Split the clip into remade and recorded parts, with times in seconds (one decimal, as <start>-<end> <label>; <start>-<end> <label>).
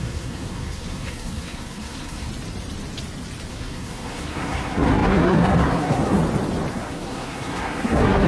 0.0-2.3 remade; 2.3-3.5 recorded; 3.5-6.2 remade; 6.2-6.7 recorded; 6.7-8.3 remade